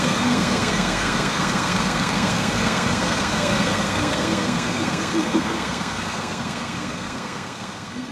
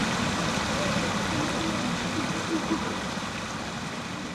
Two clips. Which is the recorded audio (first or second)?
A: second